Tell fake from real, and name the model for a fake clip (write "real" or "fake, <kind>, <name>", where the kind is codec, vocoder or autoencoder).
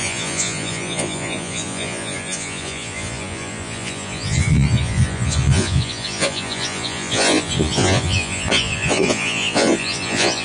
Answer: fake, vocoder, Vocos